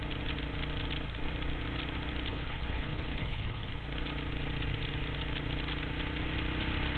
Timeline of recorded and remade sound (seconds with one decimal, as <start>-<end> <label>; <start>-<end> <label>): 0.0-2.3 recorded; 2.3-3.7 remade; 3.7-7.0 recorded